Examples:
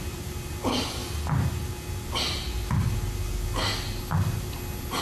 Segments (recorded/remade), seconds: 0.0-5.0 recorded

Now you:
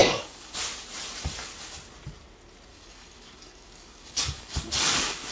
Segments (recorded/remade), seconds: 0.0-0.6 remade; 0.6-2.7 recorded; 2.7-5.3 remade

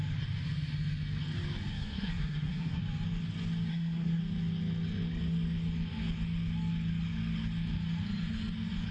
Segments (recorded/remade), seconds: 0.0-1.7 recorded; 1.7-2.8 remade; 2.8-3.7 recorded; 3.7-4.2 remade; 4.2-8.9 recorded

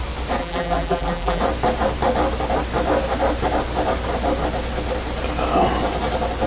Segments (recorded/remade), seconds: 0.0-0.4 recorded; 0.4-1.4 remade; 1.4-6.5 recorded

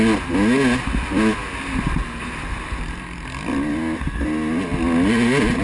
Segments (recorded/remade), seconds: 0.0-5.6 recorded

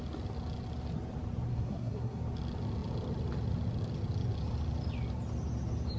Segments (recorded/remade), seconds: 0.0-1.5 recorded; 1.5-2.2 remade; 2.2-6.0 recorded